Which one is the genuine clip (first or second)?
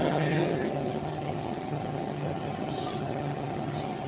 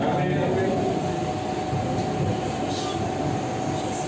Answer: second